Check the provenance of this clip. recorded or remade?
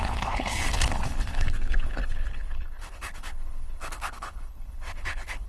remade